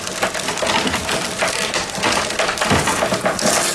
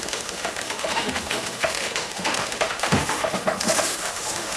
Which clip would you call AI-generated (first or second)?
second